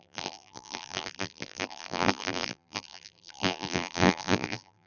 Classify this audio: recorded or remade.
remade